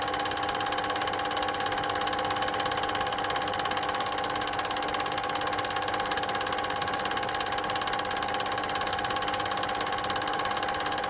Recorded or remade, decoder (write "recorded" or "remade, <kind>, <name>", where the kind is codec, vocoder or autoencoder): recorded